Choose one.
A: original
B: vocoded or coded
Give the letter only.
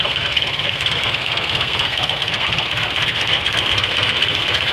B